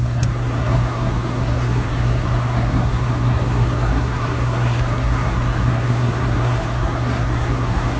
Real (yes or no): no